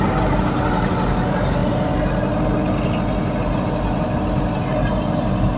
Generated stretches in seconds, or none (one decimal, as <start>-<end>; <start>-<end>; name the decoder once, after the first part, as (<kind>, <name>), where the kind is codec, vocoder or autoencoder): none